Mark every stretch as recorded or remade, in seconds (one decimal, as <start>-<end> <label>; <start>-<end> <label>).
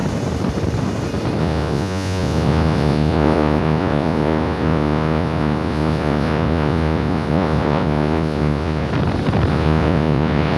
0.0-1.4 recorded; 1.4-8.9 remade; 8.9-9.5 recorded; 9.5-10.6 remade